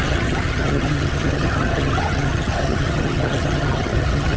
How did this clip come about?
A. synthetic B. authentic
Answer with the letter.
A